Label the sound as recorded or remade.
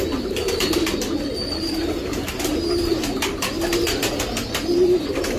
recorded